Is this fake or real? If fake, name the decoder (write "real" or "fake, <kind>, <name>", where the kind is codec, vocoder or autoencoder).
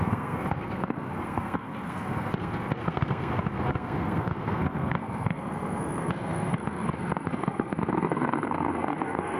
fake, codec, SNAC